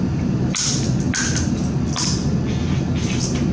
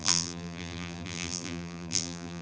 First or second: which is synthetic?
second